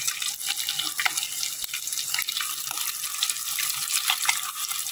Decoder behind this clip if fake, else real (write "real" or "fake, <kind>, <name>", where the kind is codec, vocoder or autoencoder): real